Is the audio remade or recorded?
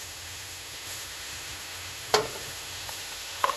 remade